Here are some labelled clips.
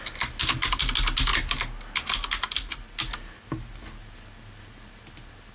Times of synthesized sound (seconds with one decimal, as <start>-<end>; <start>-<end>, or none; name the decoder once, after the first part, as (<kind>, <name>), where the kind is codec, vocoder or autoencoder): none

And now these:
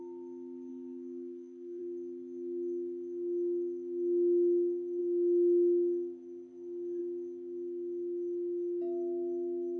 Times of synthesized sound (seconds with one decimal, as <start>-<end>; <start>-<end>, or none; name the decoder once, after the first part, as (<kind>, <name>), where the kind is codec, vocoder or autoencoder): 0.7-1.8 (codec, SNAC)

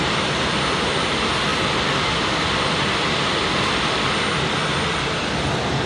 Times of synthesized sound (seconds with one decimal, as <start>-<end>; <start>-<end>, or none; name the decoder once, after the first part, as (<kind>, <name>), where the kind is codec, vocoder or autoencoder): none

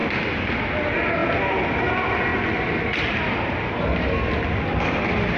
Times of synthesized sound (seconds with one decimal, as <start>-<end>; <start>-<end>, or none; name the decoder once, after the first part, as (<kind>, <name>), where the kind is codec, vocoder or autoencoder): none

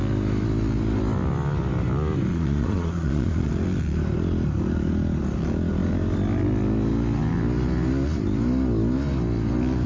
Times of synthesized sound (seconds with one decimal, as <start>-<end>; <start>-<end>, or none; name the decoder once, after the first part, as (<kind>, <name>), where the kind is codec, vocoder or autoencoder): 2.3-3.5 (vocoder, Vocos)

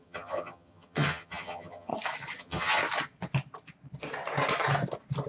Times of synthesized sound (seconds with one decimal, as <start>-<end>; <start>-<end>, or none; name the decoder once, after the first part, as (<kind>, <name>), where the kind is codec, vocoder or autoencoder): 0.0-1.9 (vocoder, HiFi-GAN); 2.4-2.8

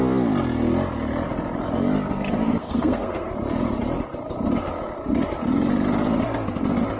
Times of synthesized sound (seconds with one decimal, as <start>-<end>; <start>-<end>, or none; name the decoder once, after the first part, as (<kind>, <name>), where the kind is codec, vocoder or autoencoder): 2.6-3.3 (codec, SNAC)